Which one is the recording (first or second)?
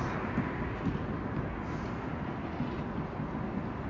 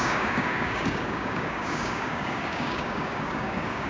first